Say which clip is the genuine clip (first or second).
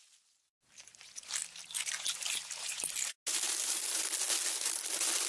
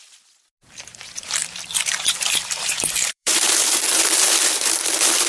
first